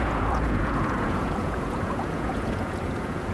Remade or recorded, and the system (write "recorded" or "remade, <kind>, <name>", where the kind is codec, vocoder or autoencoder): remade, vocoder, Vocos